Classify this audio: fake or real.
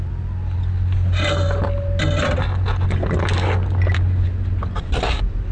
real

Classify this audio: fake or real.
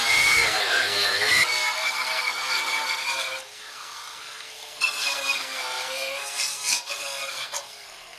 fake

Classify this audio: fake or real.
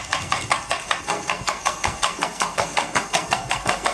fake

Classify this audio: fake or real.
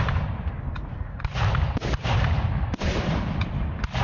real